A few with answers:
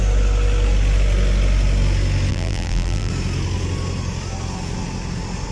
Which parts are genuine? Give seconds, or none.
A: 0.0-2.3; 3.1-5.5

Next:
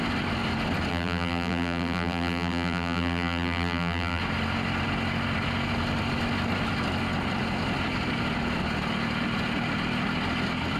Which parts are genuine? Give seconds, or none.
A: 0.0-0.9; 4.2-10.8